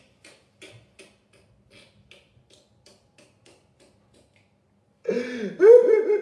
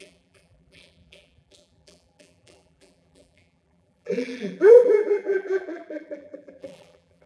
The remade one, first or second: second